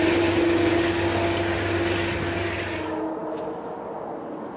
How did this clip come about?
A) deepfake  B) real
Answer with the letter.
B